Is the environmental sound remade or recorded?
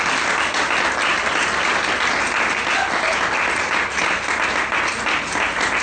recorded